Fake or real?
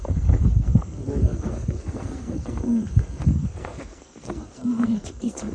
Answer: fake